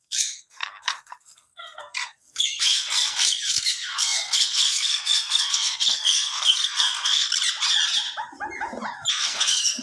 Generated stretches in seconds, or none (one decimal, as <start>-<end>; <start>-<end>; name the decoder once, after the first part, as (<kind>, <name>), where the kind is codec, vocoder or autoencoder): 0.0-7.3 (codec, SNAC); 9.1-9.8